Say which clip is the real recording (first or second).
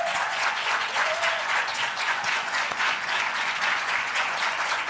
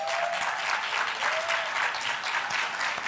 second